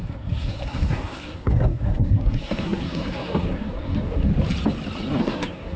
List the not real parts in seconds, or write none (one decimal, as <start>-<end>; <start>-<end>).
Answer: 0.0-4.3; 5.2-5.8